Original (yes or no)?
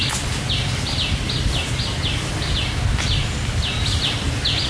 yes